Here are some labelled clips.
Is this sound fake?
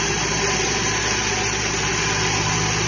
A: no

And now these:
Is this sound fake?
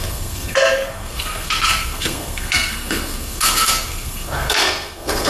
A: yes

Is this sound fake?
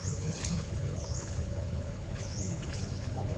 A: yes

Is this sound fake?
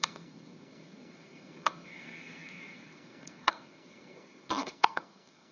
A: yes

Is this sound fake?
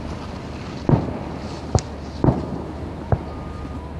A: no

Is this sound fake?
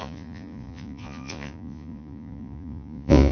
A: yes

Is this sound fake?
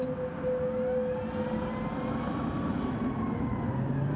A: no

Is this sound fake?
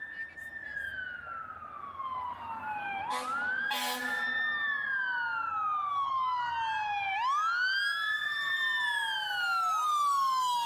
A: no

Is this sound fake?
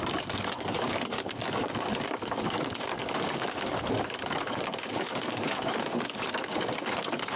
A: yes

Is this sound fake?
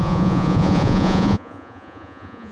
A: yes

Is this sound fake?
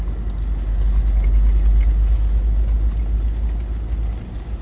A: no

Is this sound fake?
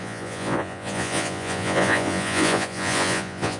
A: yes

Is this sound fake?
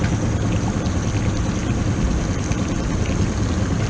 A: no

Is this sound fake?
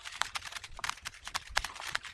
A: yes